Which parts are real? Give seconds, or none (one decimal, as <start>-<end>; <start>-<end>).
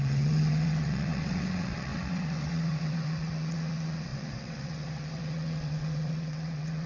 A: none